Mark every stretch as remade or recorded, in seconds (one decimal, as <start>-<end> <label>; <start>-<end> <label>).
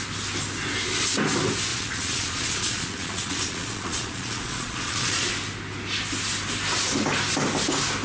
0.0-1.7 recorded; 1.7-5.3 remade; 5.3-8.0 recorded